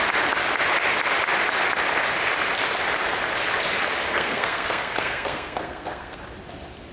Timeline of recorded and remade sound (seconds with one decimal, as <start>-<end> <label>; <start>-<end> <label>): 0.0-4.1 recorded; 4.1-6.2 remade; 6.2-6.9 recorded